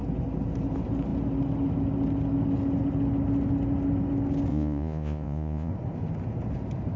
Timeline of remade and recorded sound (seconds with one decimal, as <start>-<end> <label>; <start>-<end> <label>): 0.0-4.5 recorded; 4.5-5.7 remade; 5.7-7.0 recorded